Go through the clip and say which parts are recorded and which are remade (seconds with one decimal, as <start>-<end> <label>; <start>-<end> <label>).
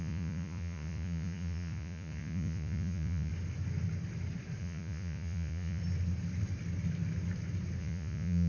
0.0-3.3 remade; 3.3-4.6 recorded; 4.6-5.8 remade; 5.8-7.8 recorded; 7.8-8.5 remade